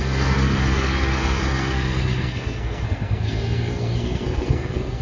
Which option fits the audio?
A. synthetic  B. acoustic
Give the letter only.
A